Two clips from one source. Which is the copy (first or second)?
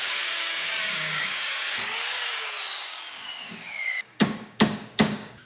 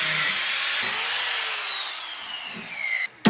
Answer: first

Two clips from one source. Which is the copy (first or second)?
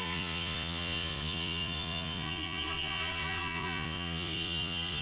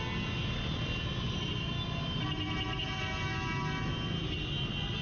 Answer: first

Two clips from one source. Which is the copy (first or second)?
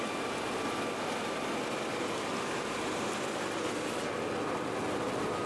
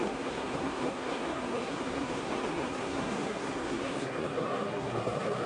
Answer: second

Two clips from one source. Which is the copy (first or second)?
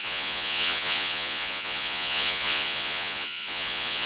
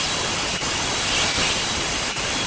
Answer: first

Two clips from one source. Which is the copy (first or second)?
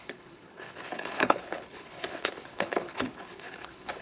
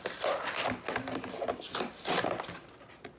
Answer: first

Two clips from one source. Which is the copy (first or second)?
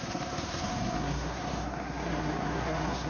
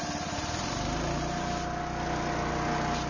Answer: first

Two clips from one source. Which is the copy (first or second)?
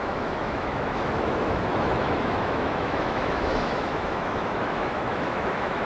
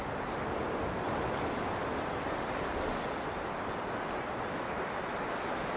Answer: first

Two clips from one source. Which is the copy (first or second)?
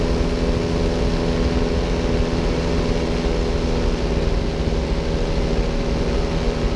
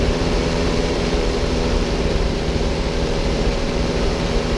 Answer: second